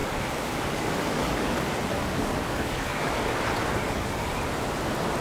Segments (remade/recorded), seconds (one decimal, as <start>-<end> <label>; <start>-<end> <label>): 0.0-1.6 remade; 1.6-2.0 recorded; 2.0-3.4 remade; 3.4-3.8 recorded; 3.8-4.3 remade; 4.3-5.2 recorded